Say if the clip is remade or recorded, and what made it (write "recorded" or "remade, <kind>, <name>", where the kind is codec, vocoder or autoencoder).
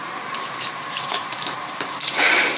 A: remade, vocoder, BigVGAN v2